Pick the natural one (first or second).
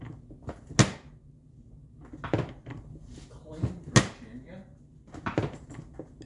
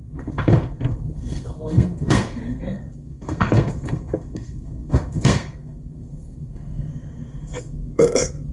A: first